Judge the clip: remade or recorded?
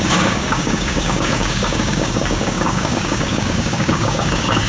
remade